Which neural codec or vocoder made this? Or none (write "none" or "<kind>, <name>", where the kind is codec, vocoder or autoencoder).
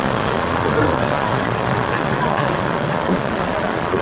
vocoder, Vocos